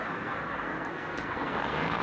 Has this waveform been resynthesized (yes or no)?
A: yes